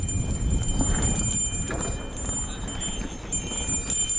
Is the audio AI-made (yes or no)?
no